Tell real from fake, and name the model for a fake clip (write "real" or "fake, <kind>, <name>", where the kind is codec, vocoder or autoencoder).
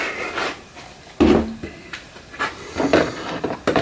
real